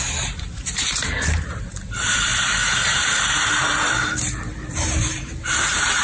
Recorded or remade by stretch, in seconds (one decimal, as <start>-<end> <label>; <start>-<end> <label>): 0.0-2.3 remade; 2.3-3.5 recorded; 3.5-6.0 remade